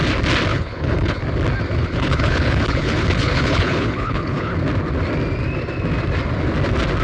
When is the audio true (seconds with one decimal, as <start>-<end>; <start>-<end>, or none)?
0.0-0.5; 1.2-1.8; 4.5-7.0